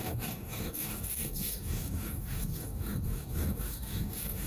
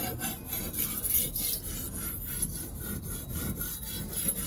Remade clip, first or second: first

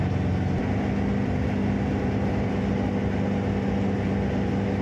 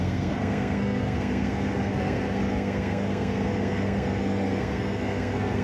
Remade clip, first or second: second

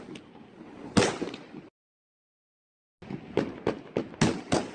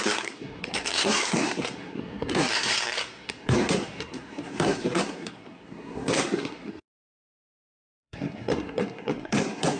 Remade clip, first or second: second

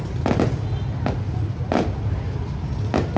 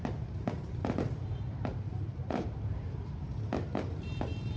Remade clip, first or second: second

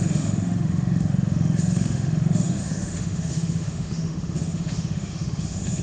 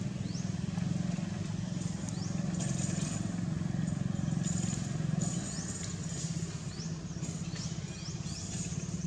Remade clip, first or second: first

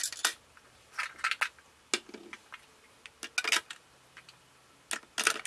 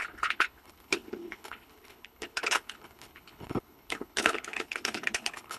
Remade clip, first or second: second